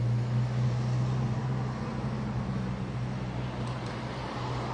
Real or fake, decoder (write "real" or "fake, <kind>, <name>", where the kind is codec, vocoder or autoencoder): real